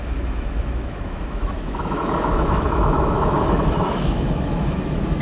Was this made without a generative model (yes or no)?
no